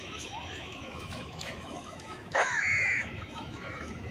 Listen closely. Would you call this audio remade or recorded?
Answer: remade